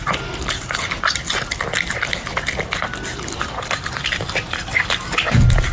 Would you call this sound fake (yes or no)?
no